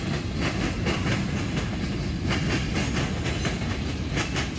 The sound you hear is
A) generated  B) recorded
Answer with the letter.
B